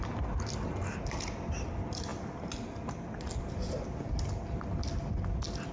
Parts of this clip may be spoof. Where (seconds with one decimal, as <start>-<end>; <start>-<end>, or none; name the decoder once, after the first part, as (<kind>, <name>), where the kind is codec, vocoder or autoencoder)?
none